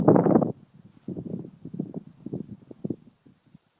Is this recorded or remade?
recorded